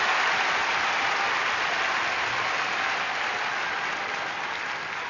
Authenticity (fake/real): real